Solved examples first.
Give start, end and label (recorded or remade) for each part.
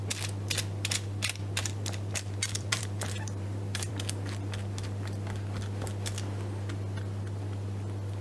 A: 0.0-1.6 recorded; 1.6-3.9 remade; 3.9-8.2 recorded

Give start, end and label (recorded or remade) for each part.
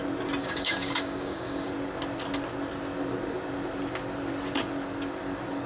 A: 0.0-0.4 recorded; 0.4-1.7 remade; 1.7-5.7 recorded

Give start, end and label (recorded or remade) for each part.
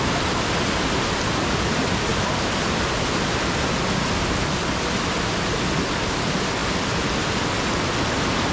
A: 0.0-2.1 recorded; 2.1-2.9 remade; 2.9-8.5 recorded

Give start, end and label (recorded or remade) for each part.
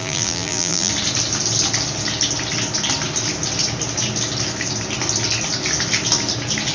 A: 0.0-0.9 remade; 0.9-6.7 recorded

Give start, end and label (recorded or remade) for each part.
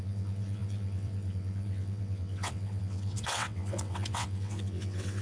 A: 0.0-5.2 remade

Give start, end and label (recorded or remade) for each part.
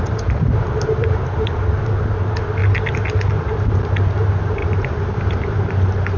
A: 0.0-2.6 remade; 2.6-3.4 recorded; 3.4-6.2 remade